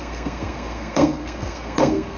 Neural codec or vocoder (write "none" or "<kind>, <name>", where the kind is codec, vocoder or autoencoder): codec, SNAC